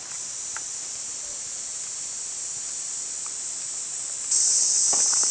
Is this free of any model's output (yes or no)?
yes